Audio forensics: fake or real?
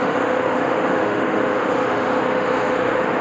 fake